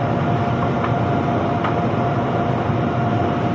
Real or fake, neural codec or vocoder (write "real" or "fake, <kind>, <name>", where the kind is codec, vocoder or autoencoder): real